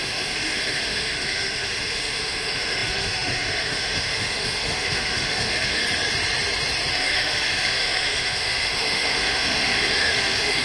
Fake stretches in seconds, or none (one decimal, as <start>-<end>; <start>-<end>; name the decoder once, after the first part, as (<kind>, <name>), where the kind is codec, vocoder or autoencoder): 0.0-5.8 (autoencoder, DAC-VAE); 6.9-10.6